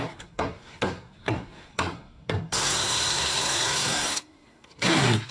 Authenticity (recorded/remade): remade